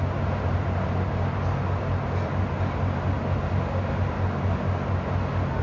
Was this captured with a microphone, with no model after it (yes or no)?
yes